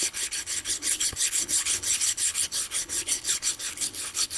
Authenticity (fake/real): fake